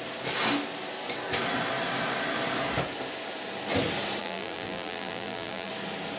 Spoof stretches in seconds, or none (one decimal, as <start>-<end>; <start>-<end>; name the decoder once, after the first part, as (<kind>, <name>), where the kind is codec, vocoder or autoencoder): 4.2-5.7 (vocoder, BigVGAN v2)